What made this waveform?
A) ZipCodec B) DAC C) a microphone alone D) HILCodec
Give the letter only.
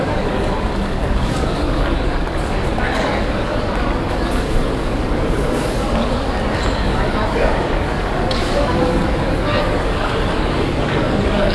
B